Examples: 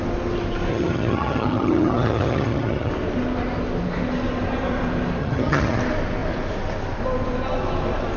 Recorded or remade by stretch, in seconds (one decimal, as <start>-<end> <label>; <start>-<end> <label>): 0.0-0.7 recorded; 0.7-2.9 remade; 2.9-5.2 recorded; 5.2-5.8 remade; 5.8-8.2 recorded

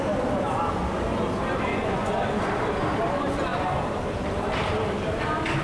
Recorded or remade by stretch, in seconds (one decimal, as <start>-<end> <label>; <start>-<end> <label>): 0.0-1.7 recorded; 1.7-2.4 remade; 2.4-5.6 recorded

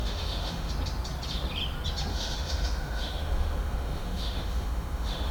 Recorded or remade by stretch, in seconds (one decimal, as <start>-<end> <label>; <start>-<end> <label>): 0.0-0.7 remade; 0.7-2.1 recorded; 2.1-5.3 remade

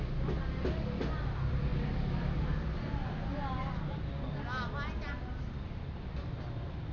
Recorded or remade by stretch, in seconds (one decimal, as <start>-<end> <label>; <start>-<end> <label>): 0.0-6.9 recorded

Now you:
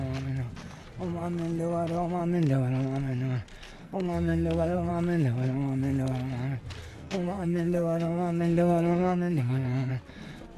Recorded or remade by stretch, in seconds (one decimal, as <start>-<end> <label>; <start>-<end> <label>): 0.0-3.8 recorded; 3.8-4.9 remade; 4.9-6.9 recorded; 6.9-9.9 remade; 9.9-10.6 recorded

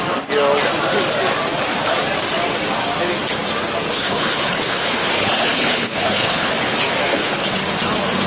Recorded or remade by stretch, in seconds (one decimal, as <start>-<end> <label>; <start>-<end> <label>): 0.0-3.9 recorded; 3.9-6.5 remade; 6.5-7.1 recorded; 7.1-7.6 remade; 7.6-8.3 recorded